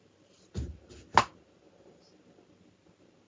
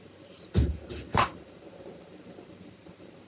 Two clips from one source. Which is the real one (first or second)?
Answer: first